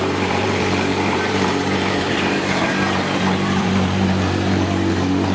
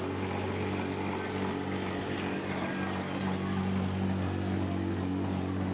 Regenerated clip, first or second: first